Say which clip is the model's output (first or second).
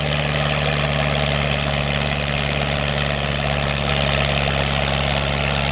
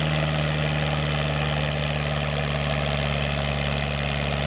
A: first